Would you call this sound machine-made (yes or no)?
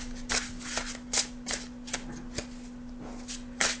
no